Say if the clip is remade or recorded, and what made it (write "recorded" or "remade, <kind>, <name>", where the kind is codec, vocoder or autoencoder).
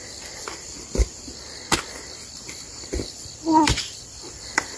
remade, vocoder, BigVGAN v2